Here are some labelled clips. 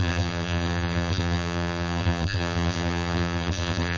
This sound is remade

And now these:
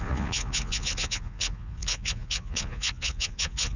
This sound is remade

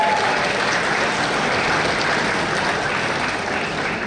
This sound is recorded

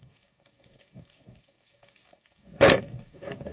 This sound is remade